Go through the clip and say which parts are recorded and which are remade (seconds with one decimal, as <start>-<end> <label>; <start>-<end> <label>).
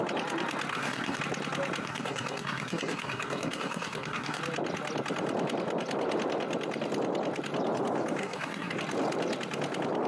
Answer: 0.0-0.7 recorded; 0.7-1.2 remade; 1.2-1.8 recorded; 1.8-4.4 remade; 4.4-8.2 recorded; 8.2-8.7 remade; 8.7-10.1 recorded